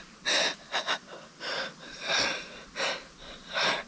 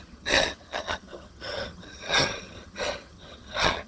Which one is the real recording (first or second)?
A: first